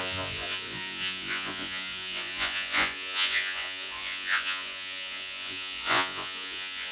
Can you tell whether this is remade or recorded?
remade